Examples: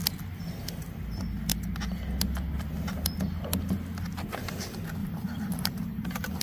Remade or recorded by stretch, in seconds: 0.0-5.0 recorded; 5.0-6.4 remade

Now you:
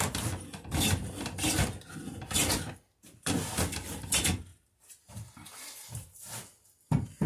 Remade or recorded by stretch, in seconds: 0.0-4.5 recorded; 4.5-6.2 remade; 6.2-7.3 recorded

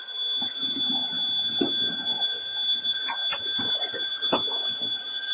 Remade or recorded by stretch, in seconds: 0.0-5.3 recorded

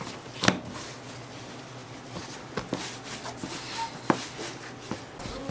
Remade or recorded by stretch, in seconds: 0.0-5.5 recorded

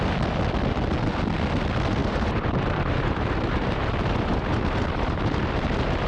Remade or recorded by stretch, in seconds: 0.0-2.0 recorded; 2.0-3.8 remade; 3.8-4.3 recorded; 4.3-5.4 remade; 5.4-6.1 recorded

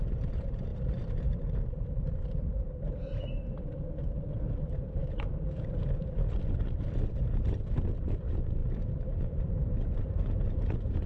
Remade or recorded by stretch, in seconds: 0.0-11.1 remade